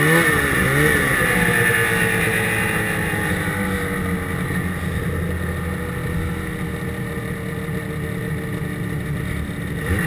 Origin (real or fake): real